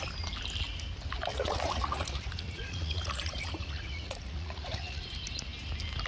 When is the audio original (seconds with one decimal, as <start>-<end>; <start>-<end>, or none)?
0.0-1.3; 5.0-6.1